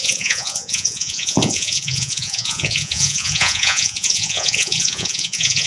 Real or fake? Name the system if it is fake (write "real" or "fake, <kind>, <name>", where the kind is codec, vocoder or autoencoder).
fake, vocoder, Vocos